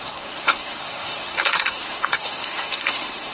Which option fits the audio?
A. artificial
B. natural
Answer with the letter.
A